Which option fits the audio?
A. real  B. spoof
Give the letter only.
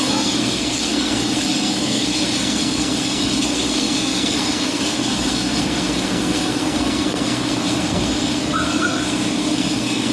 B